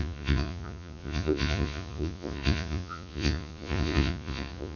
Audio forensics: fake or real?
fake